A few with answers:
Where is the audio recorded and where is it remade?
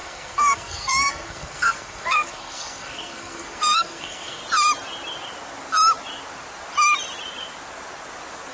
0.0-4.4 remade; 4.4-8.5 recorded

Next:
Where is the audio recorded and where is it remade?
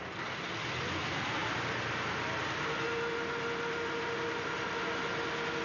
0.0-5.6 recorded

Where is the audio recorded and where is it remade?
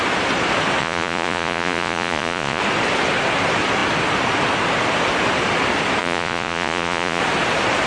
0.0-0.8 recorded; 0.8-2.6 remade; 2.6-6.0 recorded; 6.0-7.2 remade; 7.2-7.9 recorded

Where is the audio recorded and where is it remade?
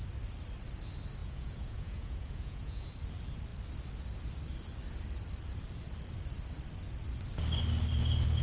0.0-1.2 recorded; 1.2-2.8 remade; 2.8-8.4 recorded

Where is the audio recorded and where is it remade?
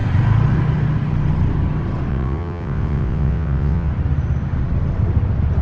0.0-2.1 recorded; 2.1-3.9 remade; 3.9-5.6 recorded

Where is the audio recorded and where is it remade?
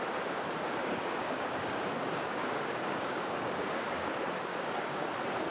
0.0-0.8 recorded; 0.8-4.1 remade; 4.1-4.5 recorded; 4.5-5.1 remade; 5.1-5.5 recorded